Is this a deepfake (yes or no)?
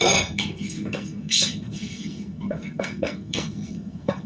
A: yes